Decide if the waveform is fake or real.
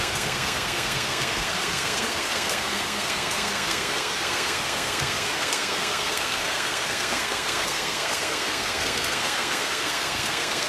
fake